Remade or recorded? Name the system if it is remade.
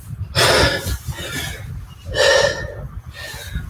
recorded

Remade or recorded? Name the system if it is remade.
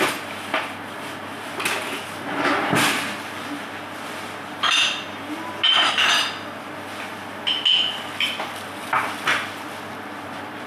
recorded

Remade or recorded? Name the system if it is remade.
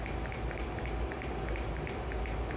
recorded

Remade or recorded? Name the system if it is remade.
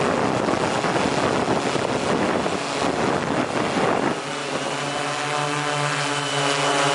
recorded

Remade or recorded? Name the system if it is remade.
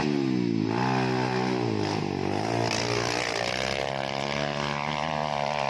recorded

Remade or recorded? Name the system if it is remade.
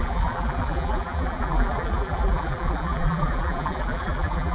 remade, vocoder, BigVGAN v2